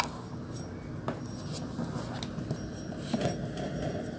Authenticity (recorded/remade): recorded